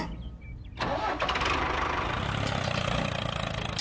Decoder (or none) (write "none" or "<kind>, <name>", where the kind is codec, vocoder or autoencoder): none